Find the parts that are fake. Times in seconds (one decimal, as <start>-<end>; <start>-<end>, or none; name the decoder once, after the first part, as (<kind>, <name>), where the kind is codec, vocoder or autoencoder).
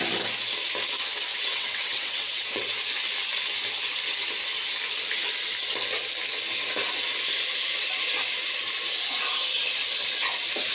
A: 1.3-2.7 (vocoder, WaveNeXt)